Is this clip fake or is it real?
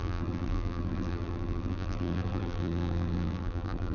fake